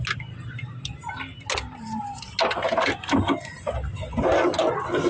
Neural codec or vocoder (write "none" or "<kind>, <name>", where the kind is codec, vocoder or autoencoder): none